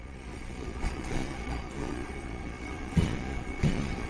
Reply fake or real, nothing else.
fake